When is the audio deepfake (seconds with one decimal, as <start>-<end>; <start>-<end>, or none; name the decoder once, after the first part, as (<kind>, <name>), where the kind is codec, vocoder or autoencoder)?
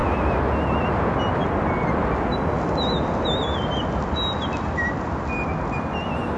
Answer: none